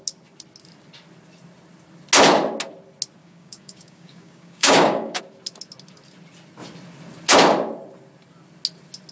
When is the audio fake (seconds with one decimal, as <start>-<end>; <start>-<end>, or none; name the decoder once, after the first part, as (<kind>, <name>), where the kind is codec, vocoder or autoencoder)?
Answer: 3.2-5.2 (codec, DAC)